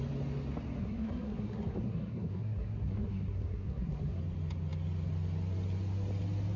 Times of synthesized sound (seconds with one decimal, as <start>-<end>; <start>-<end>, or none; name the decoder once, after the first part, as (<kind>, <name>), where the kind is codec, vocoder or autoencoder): 0.8-4.2 (codec, SNAC)